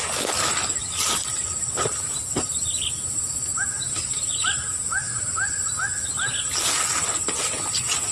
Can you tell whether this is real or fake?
real